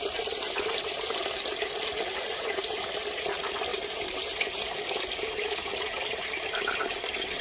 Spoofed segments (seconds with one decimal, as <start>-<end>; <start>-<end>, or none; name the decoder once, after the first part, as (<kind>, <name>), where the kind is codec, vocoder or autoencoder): 2.1-2.9 (vocoder, BigVGAN v2); 3.7-5.7